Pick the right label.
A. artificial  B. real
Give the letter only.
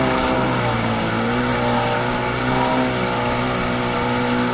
B